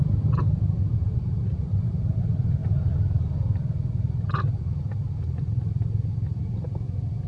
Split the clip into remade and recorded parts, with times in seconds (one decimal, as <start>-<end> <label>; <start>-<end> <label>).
0.0-0.8 recorded; 0.8-1.6 remade; 1.6-7.3 recorded